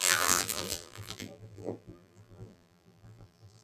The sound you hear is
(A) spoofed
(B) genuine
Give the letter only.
A